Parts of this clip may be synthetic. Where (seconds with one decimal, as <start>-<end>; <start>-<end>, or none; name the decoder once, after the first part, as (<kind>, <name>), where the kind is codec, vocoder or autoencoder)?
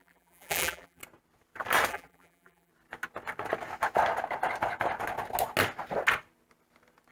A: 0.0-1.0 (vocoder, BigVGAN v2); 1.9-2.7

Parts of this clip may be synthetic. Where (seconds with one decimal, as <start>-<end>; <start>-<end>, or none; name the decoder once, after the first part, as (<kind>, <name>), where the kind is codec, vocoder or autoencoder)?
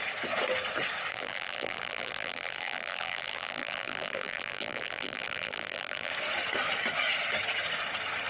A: 1.1-6.1 (vocoder, BigVGAN v2)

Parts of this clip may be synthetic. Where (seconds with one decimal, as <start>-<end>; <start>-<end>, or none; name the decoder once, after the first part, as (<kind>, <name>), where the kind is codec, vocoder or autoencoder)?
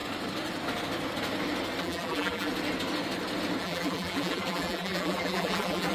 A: 1.8-2.5 (vocoder, BigVGAN v2); 3.6-5.9